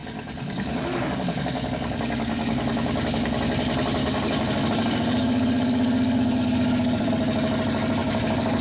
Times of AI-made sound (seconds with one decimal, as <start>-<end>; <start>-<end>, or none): 0.0-3.4; 4.0-7.1; 8.0-8.6